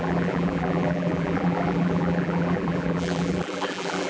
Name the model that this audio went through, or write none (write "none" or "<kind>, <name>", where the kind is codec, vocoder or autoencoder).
vocoder, BigVGAN v2